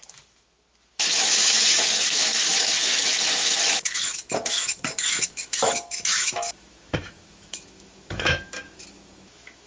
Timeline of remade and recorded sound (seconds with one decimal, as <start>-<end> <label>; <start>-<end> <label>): 0.0-9.7 remade